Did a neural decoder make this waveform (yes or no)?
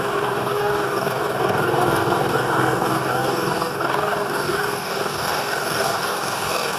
yes